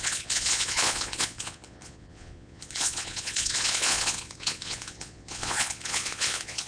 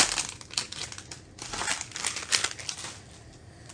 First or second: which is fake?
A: first